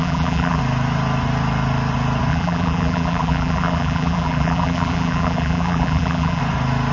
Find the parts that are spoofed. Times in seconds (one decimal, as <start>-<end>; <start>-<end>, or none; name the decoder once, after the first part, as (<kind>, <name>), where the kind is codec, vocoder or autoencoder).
0.0-0.6 (vocoder, BigVGAN v2); 2.3-6.4